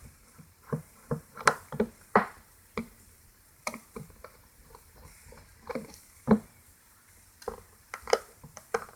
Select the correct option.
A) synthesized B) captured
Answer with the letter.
A